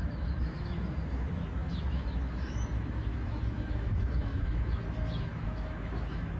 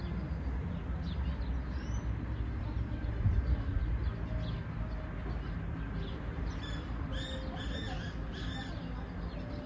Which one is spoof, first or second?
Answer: first